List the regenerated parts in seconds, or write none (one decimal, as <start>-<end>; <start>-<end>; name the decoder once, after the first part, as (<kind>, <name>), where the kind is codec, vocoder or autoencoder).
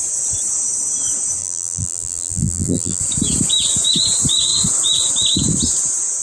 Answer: 1.4-3.0 (vocoder, BigVGAN v2)